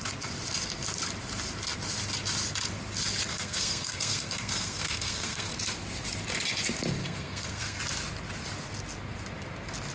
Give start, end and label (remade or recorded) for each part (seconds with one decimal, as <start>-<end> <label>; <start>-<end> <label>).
0.0-3.3 recorded; 3.3-5.5 remade; 5.5-7.0 recorded; 7.0-7.8 remade; 7.8-9.9 recorded